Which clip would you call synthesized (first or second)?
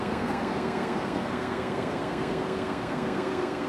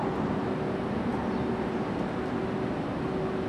first